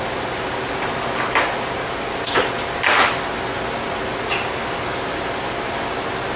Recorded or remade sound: recorded